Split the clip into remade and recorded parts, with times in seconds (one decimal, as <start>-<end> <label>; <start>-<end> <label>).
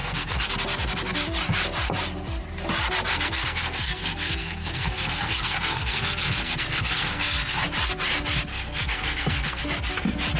0.0-0.5 remade; 0.5-3.1 recorded; 3.1-7.6 remade; 7.6-8.5 recorded; 8.5-9.6 remade; 9.6-10.4 recorded